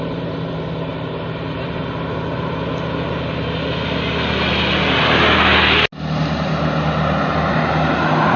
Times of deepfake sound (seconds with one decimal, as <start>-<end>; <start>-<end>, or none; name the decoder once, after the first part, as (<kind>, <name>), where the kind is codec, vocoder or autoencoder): 0.0-0.5 (vocoder, BigVGAN v2); 0.9-1.8